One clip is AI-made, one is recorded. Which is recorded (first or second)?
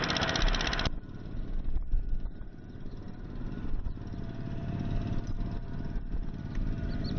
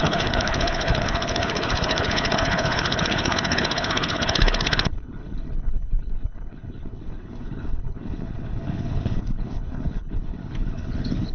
first